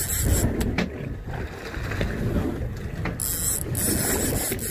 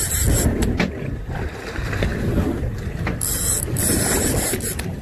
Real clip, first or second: first